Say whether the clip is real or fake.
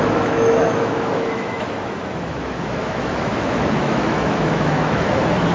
fake